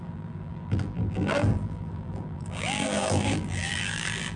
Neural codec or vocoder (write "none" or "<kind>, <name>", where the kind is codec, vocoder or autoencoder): vocoder, BigVGAN v2